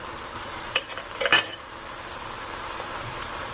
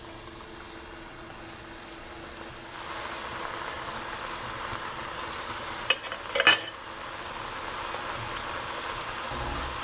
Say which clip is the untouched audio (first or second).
second